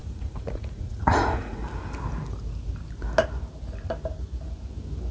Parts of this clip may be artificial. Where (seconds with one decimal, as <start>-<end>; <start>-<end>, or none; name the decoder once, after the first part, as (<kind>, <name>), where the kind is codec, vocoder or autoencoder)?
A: 0.0-1.6 (vocoder, Vocos)